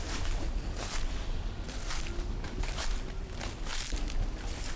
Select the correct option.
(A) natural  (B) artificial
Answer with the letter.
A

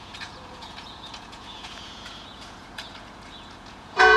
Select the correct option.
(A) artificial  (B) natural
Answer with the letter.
A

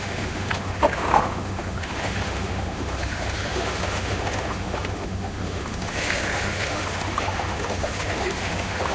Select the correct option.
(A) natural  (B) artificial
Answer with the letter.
B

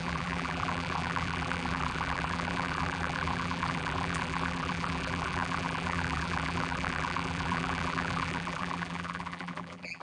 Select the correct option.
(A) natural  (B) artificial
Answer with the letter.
B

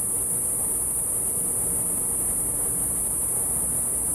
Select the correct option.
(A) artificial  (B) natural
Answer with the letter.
B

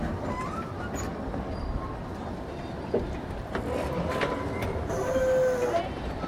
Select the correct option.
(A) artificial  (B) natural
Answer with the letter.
B